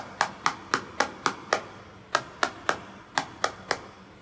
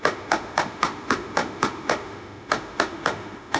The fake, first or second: second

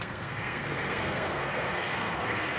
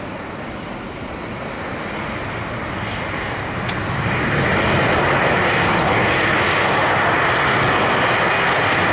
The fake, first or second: first